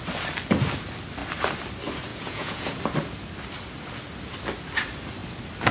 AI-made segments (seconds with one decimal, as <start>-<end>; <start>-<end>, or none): 2.1-2.8